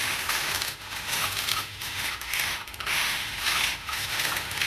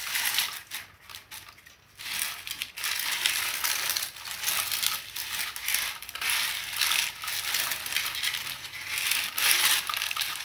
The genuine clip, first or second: second